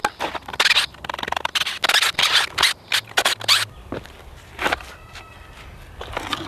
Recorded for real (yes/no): yes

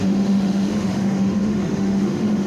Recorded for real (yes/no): no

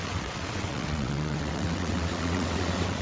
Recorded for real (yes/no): no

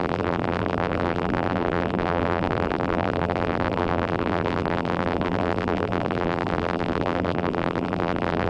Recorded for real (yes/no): no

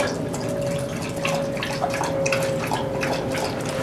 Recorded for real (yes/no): yes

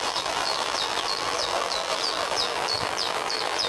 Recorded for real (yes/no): no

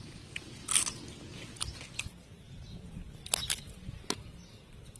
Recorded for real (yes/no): yes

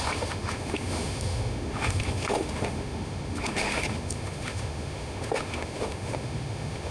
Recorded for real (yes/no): no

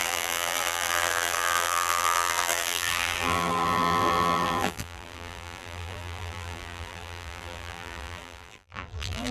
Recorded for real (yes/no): no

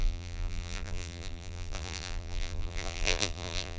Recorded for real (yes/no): no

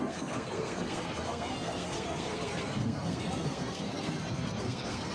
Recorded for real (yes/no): no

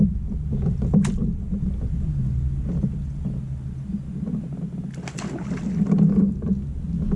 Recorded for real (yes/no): yes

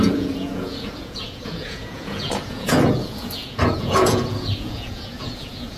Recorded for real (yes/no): no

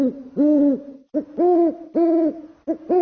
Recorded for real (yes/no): yes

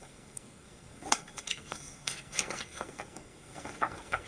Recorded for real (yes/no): no